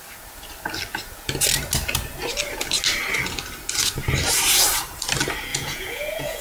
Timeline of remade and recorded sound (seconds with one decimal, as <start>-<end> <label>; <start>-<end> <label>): 0.0-5.5 recorded; 5.5-6.4 remade